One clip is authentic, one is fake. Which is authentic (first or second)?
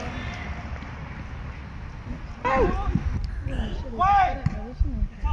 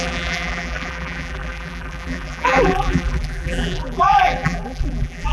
first